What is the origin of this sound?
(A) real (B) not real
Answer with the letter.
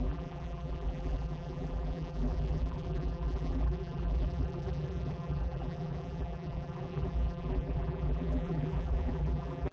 B